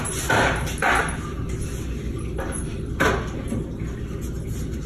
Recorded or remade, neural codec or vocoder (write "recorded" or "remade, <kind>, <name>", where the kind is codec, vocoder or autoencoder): recorded